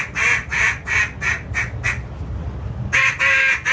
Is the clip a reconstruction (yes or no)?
no